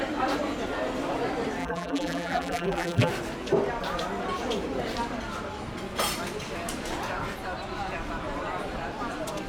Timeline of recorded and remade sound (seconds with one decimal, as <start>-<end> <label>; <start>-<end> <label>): 0.0-1.6 recorded; 1.6-3.1 remade; 3.1-9.5 recorded